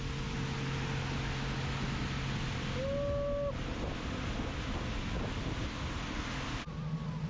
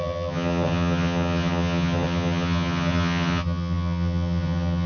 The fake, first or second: second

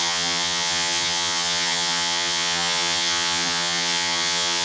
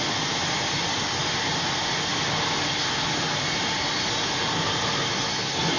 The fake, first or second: first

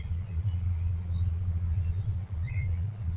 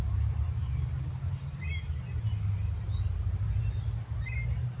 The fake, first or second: first